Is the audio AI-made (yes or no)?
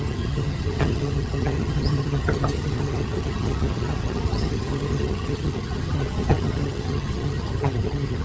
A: yes